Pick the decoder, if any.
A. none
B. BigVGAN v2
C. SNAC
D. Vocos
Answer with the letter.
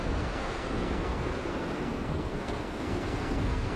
C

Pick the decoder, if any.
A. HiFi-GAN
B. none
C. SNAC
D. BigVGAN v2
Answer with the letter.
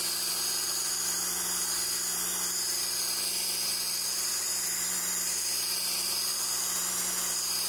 B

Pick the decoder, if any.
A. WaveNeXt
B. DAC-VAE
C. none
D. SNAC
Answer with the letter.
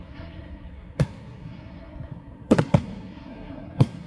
D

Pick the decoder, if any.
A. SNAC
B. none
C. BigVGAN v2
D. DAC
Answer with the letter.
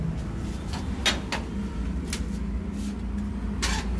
B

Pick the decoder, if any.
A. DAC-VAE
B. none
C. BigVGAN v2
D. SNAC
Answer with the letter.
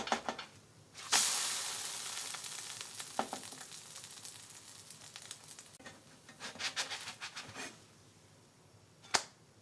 B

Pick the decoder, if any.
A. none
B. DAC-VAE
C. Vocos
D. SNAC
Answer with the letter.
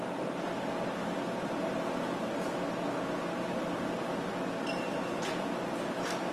A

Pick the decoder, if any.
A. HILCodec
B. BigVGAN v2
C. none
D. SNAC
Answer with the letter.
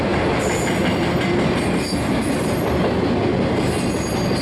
C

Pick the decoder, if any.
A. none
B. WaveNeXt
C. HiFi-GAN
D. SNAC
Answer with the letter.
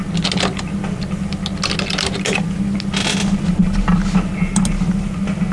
A